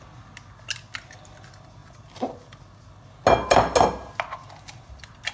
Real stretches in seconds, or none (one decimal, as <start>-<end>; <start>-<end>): 0.0-5.3